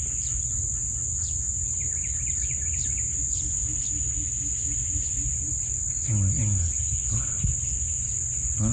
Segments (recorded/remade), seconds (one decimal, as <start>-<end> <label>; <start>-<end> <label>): 0.0-1.8 recorded; 1.8-3.8 remade; 3.8-4.9 recorded; 4.9-5.9 remade; 5.9-8.7 recorded